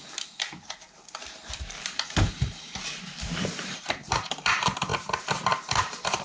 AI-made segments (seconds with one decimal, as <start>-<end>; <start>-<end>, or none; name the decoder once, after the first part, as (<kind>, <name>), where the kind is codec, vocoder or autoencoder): 0.0-4.9 (vocoder, BigVGAN v2); 5.8-6.2